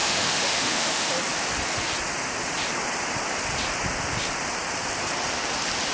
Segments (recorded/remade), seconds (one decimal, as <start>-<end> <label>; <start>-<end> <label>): 0.0-1.1 remade; 1.1-5.9 recorded